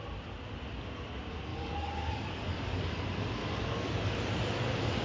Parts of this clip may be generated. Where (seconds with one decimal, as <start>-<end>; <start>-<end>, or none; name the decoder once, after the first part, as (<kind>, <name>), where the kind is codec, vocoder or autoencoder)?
1.5-3.0 (codec, DAC); 3.4-4.2